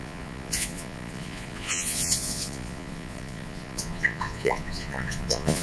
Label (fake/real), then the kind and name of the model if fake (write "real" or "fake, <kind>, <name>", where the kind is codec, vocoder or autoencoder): fake, vocoder, Vocos